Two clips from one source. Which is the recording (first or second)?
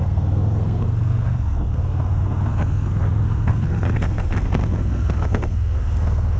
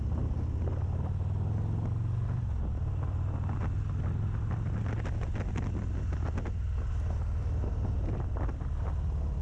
second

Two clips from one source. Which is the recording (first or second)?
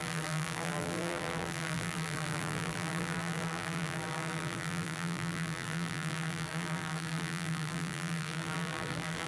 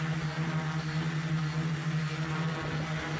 second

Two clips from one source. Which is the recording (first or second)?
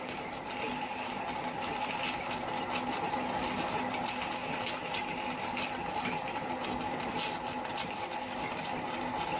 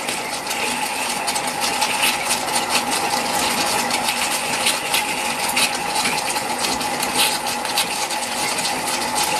first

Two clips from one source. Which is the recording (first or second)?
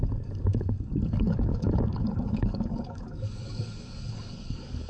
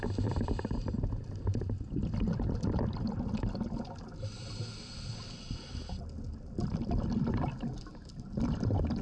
second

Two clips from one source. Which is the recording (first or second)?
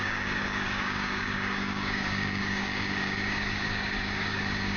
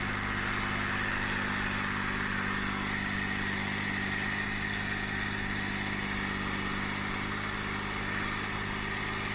second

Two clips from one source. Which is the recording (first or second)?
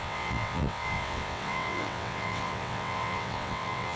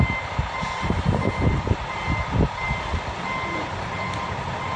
second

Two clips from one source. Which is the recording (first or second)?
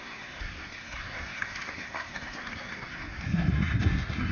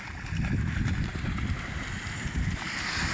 second